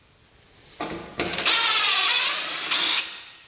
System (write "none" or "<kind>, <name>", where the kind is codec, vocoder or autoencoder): none